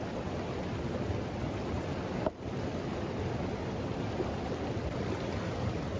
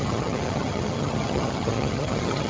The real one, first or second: first